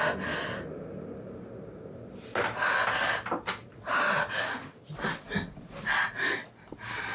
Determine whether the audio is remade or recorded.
recorded